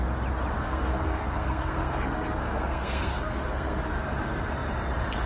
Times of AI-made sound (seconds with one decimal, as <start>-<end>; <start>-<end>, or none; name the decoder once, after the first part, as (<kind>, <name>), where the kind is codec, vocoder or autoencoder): 0.6-3.8 (codec, SNAC)